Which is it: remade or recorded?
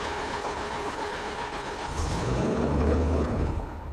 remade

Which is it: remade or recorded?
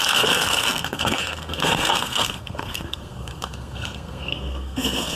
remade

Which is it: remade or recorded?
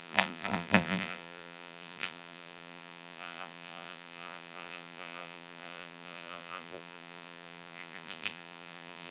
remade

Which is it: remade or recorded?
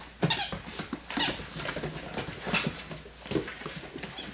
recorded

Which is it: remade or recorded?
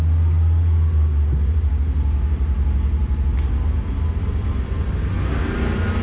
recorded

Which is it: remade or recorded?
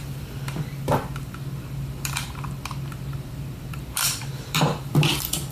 remade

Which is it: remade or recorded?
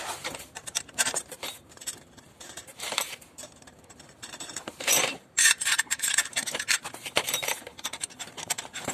remade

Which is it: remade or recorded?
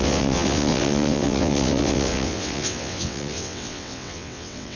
remade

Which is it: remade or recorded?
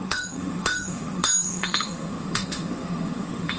remade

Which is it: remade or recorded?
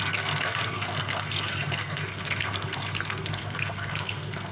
remade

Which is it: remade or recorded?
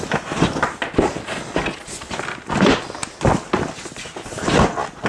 recorded